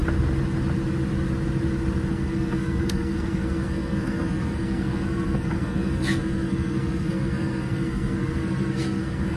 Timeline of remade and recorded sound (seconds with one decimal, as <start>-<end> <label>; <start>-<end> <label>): 0.0-2.1 recorded; 2.1-9.4 remade